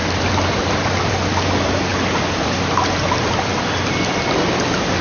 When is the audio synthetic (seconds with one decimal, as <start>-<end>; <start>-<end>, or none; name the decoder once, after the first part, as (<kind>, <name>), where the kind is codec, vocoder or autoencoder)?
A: 0.0-1.1 (vocoder, BigVGAN v2)

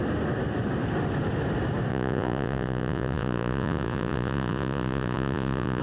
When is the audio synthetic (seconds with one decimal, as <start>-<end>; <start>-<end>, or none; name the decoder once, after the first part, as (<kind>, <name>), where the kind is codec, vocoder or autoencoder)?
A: 1.9-5.8 (vocoder, Vocos)

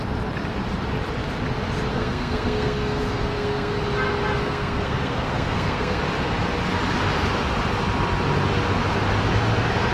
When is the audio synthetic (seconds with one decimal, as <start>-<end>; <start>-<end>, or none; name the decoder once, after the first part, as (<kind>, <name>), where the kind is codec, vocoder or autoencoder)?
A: 1.9-3.8 (codec, SNAC); 4.4-6.0

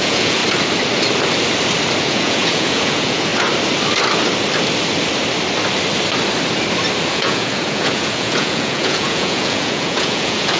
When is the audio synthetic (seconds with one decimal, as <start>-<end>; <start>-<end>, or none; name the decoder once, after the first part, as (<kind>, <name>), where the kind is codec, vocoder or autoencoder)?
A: 0.0-0.4 (vocoder, Vocos); 2.0-3.3; 7.1-10.6

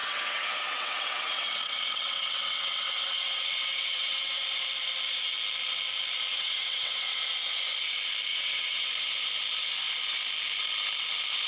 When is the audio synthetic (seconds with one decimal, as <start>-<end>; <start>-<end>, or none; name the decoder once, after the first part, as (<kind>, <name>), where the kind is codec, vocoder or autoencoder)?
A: 0.0-4.4 (vocoder, WaveNeXt); 6.3-7.2; 8.3-8.9

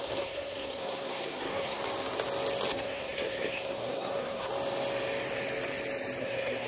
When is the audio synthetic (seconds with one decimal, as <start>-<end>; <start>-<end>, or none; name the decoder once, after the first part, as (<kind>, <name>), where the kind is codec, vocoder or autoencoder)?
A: 0.0-1.8 (codec, SNAC); 2.7-4.5; 6.2-6.7

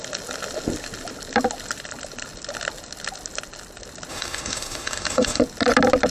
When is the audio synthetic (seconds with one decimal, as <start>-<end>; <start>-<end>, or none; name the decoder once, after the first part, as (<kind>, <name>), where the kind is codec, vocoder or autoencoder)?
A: 4.1-5.4 (autoencoder, DAC-VAE)